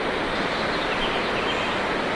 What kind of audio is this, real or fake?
real